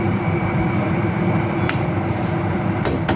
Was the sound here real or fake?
fake